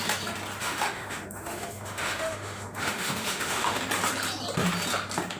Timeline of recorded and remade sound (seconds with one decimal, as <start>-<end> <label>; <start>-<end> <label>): 0.0-0.6 recorded; 0.6-3.8 remade; 3.8-5.4 recorded